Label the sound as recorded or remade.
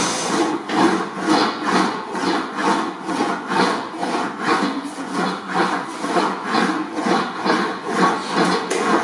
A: remade